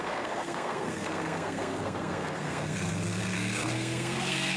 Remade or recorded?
remade